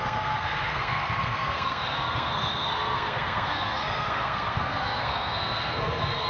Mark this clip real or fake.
fake